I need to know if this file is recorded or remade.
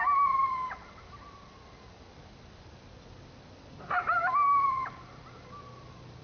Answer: recorded